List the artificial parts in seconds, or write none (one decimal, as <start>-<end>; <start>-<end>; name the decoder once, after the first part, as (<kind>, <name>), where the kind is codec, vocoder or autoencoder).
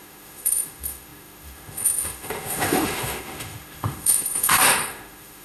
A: 0.0-5.4 (autoencoder, DAC-VAE)